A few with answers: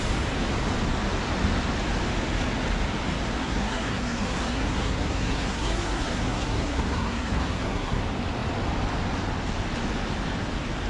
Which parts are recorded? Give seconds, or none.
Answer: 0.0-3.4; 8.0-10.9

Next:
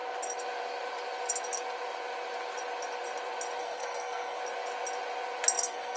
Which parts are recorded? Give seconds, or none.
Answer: 0.0-3.6; 4.4-5.6

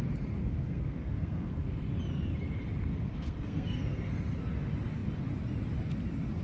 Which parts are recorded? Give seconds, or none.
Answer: 0.0-0.4; 1.9-2.9; 4.1-6.4

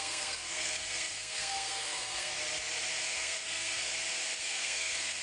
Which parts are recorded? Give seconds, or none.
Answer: 2.3-3.0; 3.9-4.4

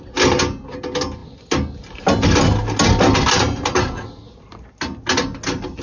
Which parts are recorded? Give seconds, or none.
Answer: 0.0-5.8

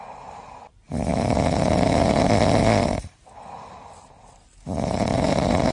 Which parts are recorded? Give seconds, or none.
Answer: 0.0-5.7

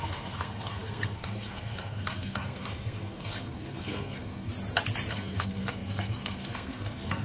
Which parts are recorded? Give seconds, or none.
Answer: 4.5-5.1